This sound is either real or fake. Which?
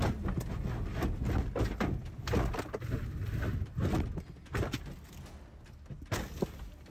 real